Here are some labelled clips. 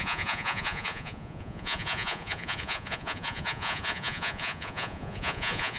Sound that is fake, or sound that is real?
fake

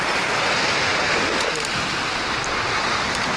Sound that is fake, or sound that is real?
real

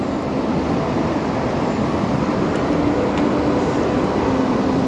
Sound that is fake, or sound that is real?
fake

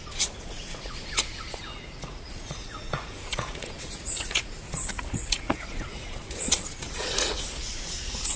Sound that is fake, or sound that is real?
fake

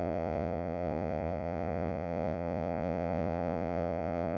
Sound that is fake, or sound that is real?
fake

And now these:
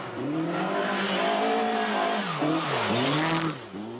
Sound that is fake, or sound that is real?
real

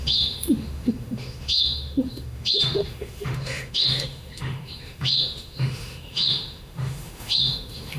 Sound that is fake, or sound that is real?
fake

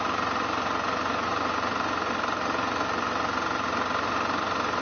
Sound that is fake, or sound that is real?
real